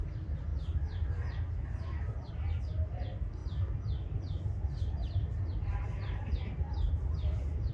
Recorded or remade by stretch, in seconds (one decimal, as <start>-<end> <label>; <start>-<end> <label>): 0.0-7.7 recorded